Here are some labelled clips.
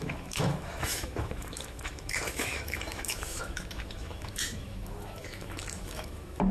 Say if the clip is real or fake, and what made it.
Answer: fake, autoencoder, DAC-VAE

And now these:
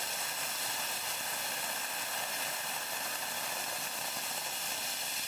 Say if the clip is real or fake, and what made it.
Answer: real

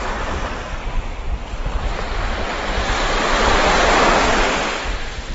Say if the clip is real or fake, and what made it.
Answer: real